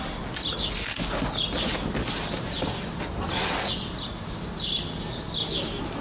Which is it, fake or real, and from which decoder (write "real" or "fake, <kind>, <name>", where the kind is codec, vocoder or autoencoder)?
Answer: real